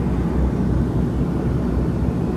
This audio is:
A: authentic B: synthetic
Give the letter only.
A